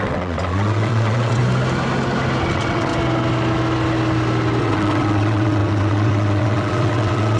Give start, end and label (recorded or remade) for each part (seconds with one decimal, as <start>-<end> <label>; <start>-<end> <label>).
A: 0.0-1.4 remade; 1.4-2.5 recorded; 2.5-2.9 remade; 2.9-4.6 recorded; 4.6-7.4 remade